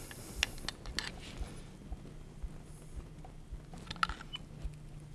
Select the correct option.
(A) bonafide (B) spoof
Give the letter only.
A